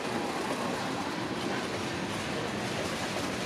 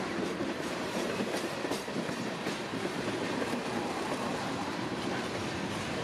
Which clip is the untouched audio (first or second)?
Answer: first